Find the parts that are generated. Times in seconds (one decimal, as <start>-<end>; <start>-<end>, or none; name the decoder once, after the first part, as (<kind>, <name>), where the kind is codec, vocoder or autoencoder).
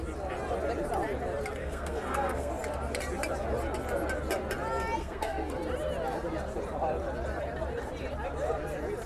1.6-2.5 (codec, SNAC); 5.0-5.5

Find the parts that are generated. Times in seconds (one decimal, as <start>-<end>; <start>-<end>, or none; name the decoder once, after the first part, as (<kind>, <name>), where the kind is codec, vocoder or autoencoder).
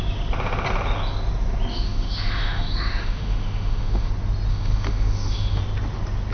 1.7-4.1 (autoencoder, DAC-VAE); 4.5-5.6